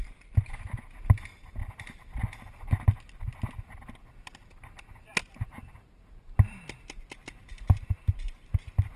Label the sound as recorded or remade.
recorded